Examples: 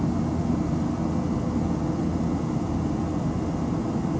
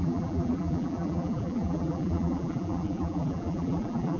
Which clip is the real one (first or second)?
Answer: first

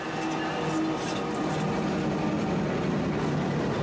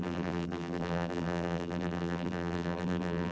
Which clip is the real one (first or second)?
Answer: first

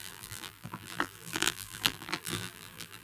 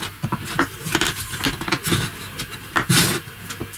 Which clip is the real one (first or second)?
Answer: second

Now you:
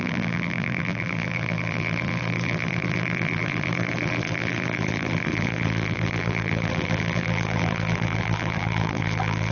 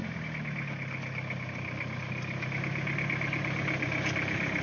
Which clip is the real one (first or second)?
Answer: second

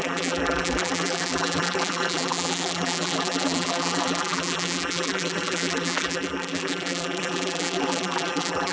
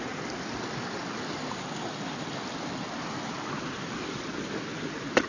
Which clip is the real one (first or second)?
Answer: second